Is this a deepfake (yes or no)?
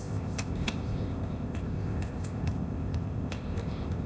yes